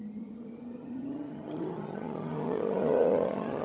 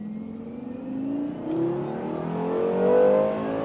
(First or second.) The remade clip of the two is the first